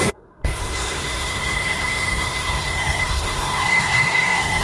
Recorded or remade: remade